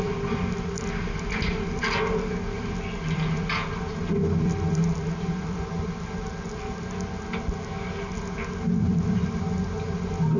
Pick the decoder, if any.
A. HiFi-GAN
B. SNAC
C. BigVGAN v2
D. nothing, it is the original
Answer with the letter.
D